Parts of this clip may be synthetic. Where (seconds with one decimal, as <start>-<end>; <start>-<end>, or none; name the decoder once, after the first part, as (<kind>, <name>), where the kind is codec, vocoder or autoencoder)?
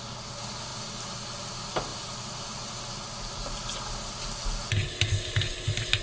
none